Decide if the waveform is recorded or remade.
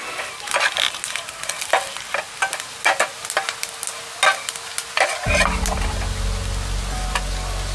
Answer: recorded